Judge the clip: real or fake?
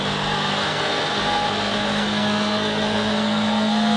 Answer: fake